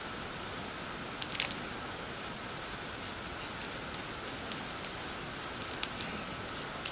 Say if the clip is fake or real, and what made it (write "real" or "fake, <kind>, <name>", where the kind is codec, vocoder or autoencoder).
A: real